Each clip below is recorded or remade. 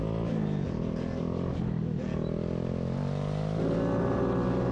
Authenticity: recorded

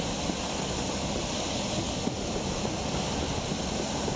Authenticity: recorded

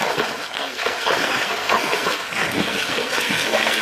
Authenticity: remade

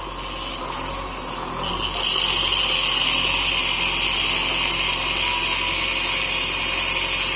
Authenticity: recorded